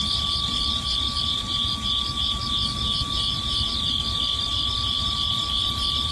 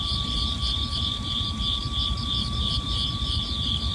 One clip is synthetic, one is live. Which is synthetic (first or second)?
second